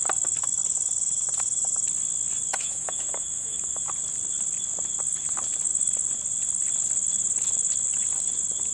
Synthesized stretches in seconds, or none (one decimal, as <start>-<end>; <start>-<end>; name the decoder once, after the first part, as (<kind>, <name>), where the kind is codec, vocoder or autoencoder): 2.5-3.8 (autoencoder, DAC-VAE)